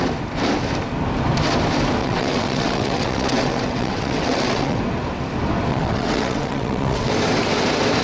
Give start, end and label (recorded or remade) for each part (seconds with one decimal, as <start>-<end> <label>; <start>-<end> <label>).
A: 0.0-2.0 recorded; 2.0-4.8 remade; 4.8-5.7 recorded; 5.7-7.1 remade; 7.1-8.0 recorded